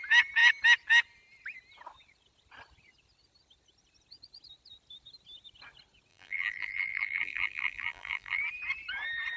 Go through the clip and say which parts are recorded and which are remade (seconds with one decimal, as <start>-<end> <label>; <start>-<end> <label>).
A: 0.0-6.1 recorded; 6.1-8.4 remade; 8.4-9.4 recorded